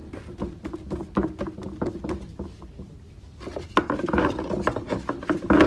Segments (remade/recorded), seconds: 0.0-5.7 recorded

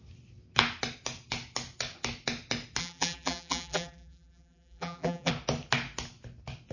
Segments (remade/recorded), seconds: 0.0-2.8 recorded; 2.8-5.3 remade; 5.3-6.7 recorded

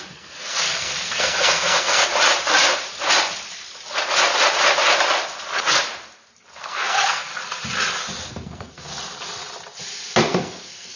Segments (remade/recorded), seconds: 0.0-2.1 remade; 2.1-6.6 recorded; 6.6-7.3 remade; 7.3-8.3 recorded; 8.3-8.9 remade; 8.9-10.2 recorded; 10.2-11.0 remade

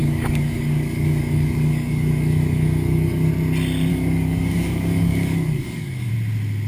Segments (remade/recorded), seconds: 0.0-3.3 remade; 3.3-3.9 recorded; 3.9-6.1 remade; 6.1-6.7 recorded

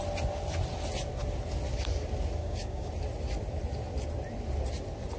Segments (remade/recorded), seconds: 0.0-2.4 recorded; 2.4-2.9 remade; 2.9-5.2 recorded